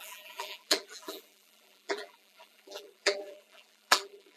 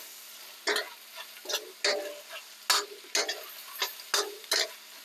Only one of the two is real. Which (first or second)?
second